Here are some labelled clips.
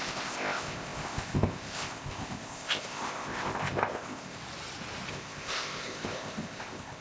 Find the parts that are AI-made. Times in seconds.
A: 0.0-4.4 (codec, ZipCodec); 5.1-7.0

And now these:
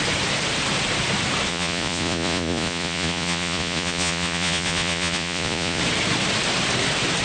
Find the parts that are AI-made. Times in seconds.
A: 1.5-5.8 (vocoder, Vocos)

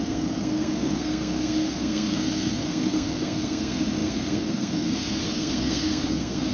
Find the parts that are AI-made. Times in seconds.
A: 0.0-6.5 (codec, SNAC)

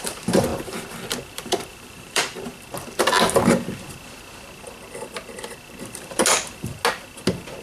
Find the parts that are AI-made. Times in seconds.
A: 0.0-0.5 (vocoder, BigVGAN v2); 1.7-2.5; 5.8-6.2

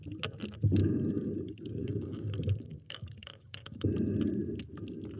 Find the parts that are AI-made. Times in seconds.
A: 0.8-3.9 (codec, DAC)